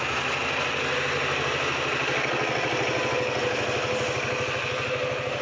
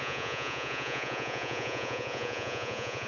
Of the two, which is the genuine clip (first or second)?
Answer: first